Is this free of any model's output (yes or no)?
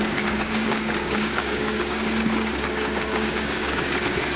no